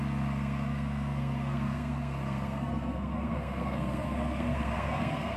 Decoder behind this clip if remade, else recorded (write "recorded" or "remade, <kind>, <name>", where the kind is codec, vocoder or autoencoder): remade, codec, SNAC